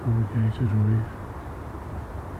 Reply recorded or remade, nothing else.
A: remade